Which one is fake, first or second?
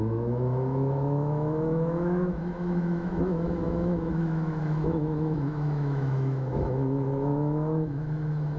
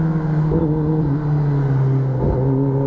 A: first